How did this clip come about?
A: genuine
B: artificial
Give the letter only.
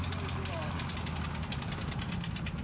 A